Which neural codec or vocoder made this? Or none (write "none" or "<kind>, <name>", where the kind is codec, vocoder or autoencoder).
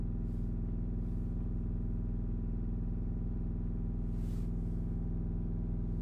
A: none